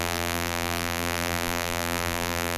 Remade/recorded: remade